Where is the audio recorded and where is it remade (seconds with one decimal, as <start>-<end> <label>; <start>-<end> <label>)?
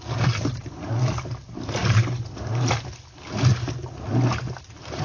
0.0-5.0 recorded